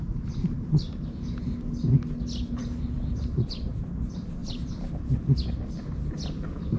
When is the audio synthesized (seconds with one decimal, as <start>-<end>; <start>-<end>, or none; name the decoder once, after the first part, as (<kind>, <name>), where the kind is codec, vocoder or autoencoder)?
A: none